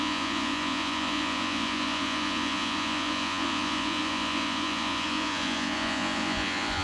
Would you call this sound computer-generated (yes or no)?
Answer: yes